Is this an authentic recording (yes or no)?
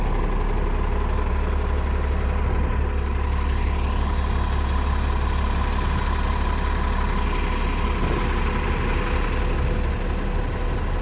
yes